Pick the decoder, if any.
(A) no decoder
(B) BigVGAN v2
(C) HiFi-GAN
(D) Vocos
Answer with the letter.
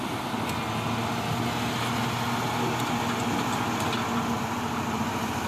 A